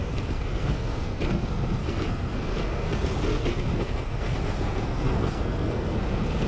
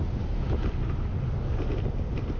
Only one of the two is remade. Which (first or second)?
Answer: first